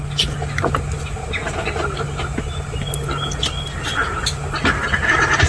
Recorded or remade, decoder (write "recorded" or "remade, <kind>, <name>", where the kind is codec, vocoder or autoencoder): recorded